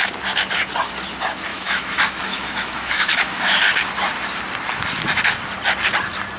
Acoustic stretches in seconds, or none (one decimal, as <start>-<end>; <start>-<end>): 0.0-1.5; 3.6-6.4